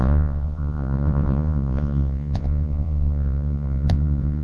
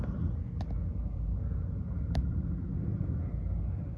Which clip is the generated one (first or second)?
first